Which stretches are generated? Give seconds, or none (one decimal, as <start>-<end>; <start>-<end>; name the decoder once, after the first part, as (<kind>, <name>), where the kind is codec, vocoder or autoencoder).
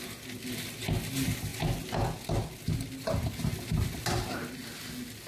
none